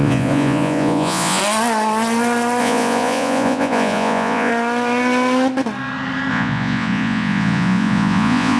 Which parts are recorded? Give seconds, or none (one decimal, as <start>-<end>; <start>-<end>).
1.4-2.6; 4.5-6.3